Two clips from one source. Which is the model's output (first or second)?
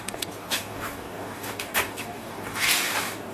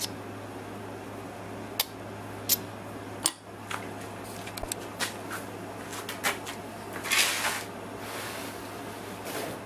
first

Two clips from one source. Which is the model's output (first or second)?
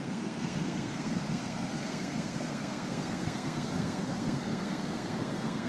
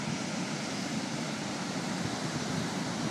first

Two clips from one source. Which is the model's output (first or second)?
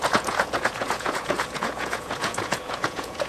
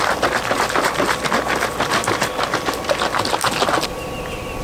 first